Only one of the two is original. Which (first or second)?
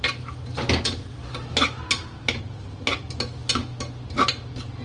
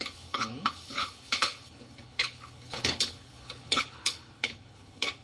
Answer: first